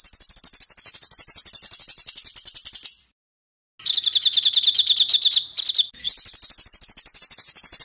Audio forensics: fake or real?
real